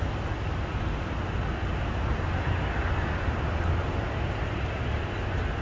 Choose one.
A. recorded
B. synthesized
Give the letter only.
A